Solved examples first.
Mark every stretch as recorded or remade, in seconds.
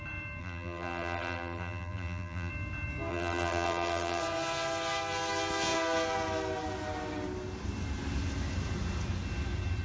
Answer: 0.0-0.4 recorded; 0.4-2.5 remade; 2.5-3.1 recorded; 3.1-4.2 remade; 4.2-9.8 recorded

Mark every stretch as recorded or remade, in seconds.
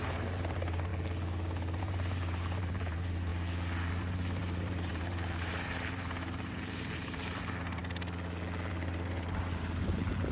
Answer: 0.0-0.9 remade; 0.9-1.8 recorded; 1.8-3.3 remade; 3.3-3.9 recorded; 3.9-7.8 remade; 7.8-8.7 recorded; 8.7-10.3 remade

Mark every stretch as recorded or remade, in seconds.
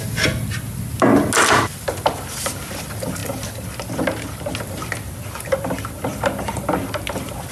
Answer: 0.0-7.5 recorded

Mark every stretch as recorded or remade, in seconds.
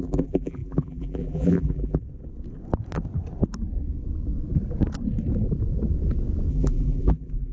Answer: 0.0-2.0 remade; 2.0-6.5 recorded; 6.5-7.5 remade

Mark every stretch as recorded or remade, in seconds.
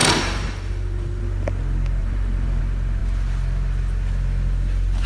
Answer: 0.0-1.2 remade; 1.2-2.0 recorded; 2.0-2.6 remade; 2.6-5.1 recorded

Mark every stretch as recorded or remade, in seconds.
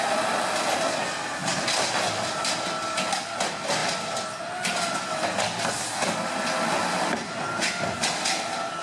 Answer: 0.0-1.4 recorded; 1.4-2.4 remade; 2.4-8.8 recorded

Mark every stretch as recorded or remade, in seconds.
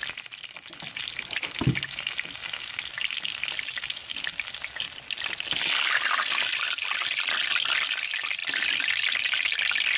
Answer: 0.0-10.0 recorded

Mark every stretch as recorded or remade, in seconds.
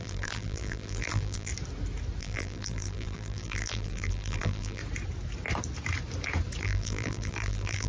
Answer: 0.0-1.5 remade; 1.5-2.2 recorded; 2.2-4.8 remade; 4.8-6.6 recorded; 6.6-7.9 remade